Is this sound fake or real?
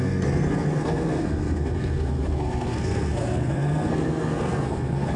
fake